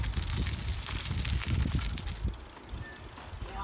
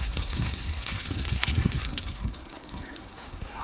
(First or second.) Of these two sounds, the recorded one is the first